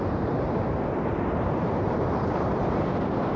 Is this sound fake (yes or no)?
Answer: yes